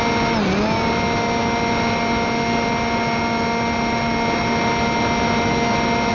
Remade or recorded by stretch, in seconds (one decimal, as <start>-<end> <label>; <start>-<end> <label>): 0.0-6.1 recorded